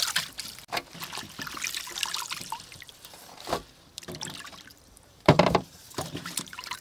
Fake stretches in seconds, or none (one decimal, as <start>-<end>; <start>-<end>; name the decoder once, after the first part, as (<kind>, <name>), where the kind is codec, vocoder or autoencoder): 4.7-6.8 (vocoder, BigVGAN v2)